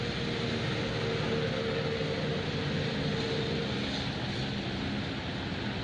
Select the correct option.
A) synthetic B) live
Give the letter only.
B